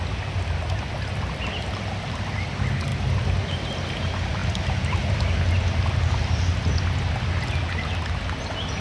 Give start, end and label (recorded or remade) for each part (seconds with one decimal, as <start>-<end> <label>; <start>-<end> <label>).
0.0-8.8 recorded